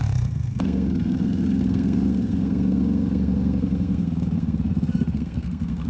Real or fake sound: fake